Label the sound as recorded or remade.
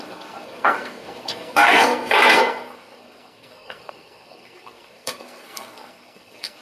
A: remade